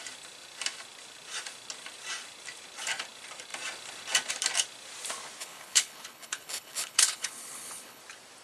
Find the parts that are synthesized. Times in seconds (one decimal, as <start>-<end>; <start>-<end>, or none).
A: 5.4-8.0